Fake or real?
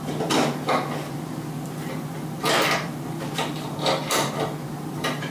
fake